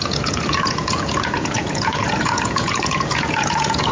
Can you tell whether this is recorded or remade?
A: remade